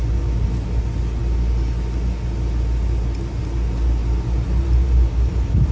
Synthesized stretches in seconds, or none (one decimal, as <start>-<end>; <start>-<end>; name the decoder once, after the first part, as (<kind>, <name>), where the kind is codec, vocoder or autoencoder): none